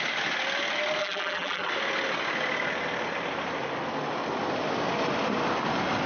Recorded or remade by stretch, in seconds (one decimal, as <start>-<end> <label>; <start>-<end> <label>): 0.0-1.0 recorded; 1.0-1.7 remade; 1.7-6.1 recorded